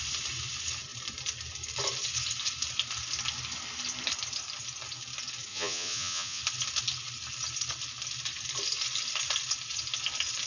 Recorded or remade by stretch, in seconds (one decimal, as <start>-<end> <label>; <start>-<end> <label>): 0.0-5.5 recorded; 5.5-6.4 remade; 6.4-10.5 recorded